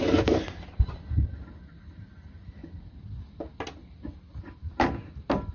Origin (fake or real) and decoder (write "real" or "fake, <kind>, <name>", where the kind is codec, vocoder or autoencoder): real